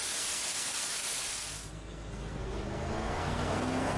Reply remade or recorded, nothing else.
remade